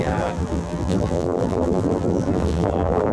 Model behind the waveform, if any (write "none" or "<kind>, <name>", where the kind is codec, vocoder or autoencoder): vocoder, BigVGAN v2